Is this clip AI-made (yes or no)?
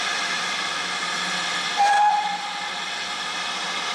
no